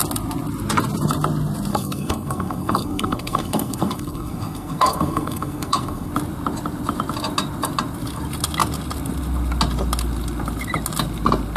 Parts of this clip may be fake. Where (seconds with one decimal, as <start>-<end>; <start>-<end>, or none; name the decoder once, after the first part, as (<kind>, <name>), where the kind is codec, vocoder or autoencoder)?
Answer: 1.7-6.1 (codec, SNAC)